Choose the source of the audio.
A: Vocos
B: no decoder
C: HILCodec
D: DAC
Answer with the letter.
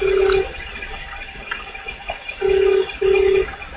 B